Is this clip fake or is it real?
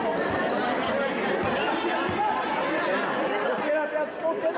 real